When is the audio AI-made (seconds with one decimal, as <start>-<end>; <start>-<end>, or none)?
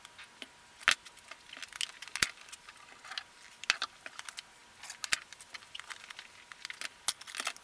none